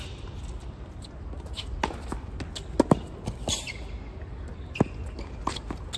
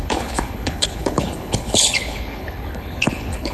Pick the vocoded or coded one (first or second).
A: second